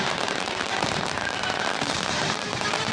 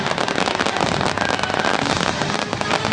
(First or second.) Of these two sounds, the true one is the second